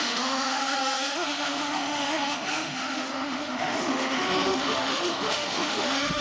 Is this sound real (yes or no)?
no